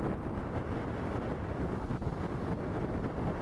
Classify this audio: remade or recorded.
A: recorded